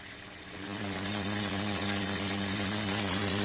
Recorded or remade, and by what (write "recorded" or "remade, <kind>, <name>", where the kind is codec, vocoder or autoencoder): remade, vocoder, Vocos